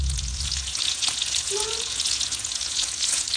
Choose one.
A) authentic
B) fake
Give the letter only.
B